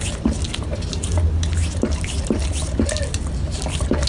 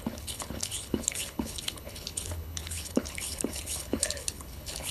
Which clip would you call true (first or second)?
first